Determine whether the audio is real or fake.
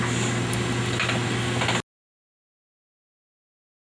real